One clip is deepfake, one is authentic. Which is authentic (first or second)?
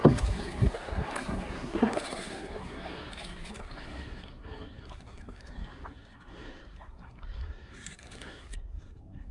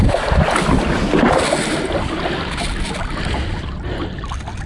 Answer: second